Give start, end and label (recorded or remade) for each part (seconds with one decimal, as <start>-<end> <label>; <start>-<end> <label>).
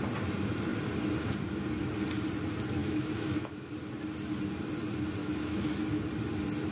0.0-2.8 recorded; 2.8-3.7 remade; 3.7-5.2 recorded; 5.2-6.0 remade; 6.0-6.7 recorded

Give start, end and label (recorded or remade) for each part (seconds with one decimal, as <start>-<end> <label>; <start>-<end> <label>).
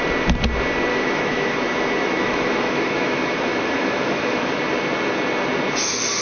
0.0-0.9 recorded; 0.9-4.6 remade; 4.6-6.2 recorded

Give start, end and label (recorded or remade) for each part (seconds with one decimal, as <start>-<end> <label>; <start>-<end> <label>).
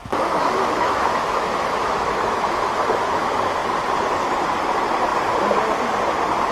0.0-2.5 remade; 2.5-6.5 recorded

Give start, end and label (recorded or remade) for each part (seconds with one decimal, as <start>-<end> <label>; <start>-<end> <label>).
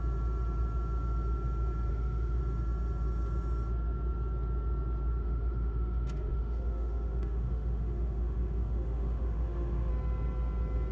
0.0-1.9 recorded; 1.9-2.4 remade; 2.4-5.2 recorded; 5.2-9.9 remade; 9.9-10.9 recorded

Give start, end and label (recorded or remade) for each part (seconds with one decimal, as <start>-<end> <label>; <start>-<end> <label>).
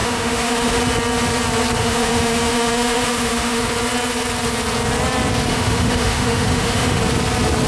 0.0-0.8 remade; 0.8-1.8 recorded; 1.8-3.6 remade; 3.6-5.5 recorded; 5.5-7.0 remade; 7.0-7.7 recorded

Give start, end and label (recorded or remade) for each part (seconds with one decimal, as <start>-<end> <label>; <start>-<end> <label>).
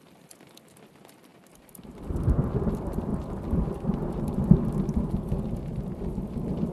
0.0-6.7 recorded